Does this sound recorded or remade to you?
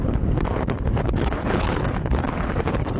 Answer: remade